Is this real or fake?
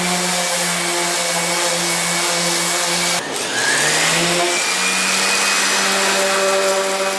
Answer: real